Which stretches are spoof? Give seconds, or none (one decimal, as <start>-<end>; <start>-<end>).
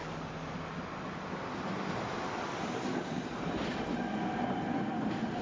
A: none